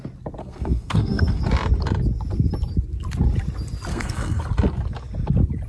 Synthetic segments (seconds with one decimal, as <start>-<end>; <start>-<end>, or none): 0.4-1.4; 3.9-4.4